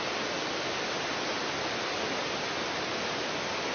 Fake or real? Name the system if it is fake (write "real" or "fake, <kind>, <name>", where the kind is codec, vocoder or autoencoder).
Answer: real